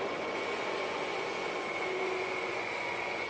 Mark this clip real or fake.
fake